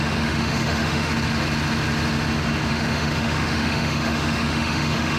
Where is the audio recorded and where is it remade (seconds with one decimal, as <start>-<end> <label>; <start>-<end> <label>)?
0.0-1.1 remade; 1.1-2.7 recorded; 2.7-5.2 remade